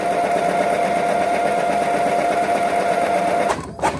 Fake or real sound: real